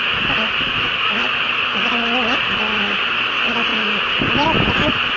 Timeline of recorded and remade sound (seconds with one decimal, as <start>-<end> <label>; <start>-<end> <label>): 0.0-3.7 recorded; 3.7-4.2 remade; 4.2-5.2 recorded